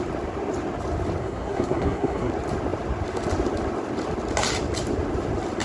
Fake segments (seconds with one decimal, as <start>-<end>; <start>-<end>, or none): 1.2-2.3